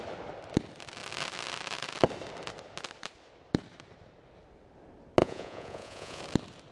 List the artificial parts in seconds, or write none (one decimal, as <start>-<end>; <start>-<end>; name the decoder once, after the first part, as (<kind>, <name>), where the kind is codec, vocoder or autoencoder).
5.2-6.2 (vocoder, Vocos)

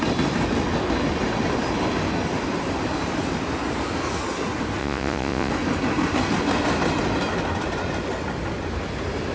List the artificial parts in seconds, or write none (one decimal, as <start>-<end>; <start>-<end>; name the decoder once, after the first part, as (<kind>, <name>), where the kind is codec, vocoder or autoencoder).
4.8-5.5 (vocoder, Vocos)

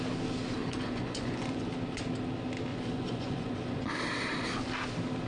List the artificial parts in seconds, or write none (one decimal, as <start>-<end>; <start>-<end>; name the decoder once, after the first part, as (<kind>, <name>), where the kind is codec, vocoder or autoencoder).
0.6-1.7 (vocoder, Vocos); 2.7-3.9

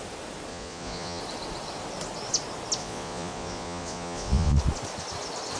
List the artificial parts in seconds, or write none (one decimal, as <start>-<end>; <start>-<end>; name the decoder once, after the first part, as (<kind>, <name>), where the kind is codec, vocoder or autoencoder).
0.5-1.2 (vocoder, Vocos); 2.8-4.6

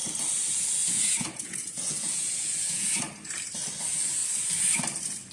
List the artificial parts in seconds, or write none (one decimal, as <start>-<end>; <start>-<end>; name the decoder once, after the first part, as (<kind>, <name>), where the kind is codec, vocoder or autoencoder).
0.8-3.0 (vocoder, Vocos)

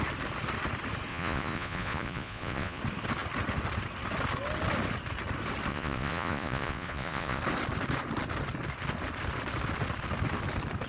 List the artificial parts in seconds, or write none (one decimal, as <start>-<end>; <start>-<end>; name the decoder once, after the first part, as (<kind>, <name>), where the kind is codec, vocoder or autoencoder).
1.1-2.8 (vocoder, Vocos); 5.7-7.4

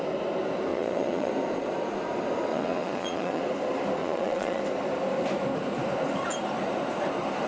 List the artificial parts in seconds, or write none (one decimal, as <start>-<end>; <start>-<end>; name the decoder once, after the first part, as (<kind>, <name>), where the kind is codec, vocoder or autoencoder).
0.7-1.3 (vocoder, Vocos); 2.5-3.4; 4.0-4.6